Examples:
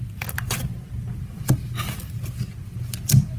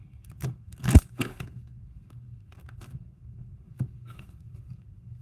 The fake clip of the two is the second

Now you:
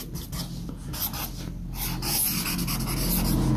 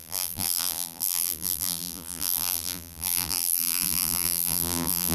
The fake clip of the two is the second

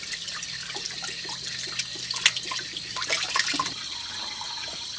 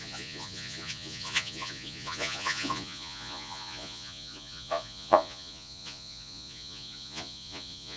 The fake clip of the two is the second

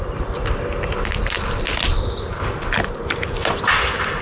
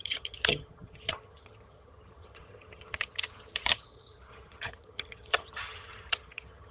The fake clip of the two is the second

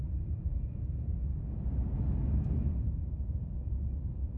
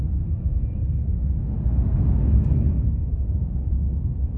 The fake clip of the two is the second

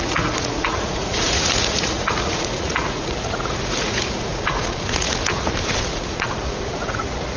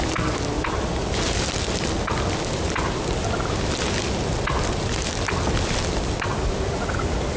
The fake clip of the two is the first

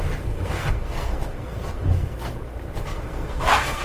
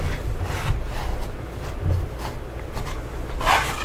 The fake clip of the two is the first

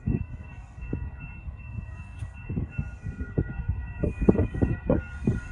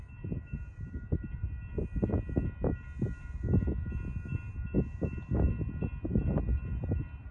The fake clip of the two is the first